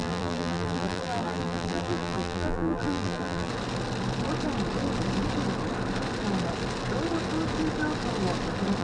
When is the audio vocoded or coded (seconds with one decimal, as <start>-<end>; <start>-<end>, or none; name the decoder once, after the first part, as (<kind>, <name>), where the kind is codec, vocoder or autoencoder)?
0.0-3.5 (vocoder, BigVGAN v2)